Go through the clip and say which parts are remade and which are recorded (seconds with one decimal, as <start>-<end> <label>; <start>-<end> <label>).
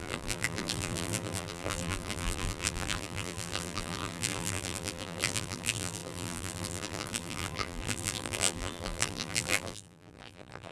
0.0-10.7 remade